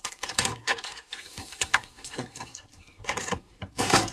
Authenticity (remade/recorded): remade